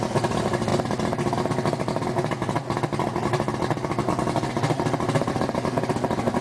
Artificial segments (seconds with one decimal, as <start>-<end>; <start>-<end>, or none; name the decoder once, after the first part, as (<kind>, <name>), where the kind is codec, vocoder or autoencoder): none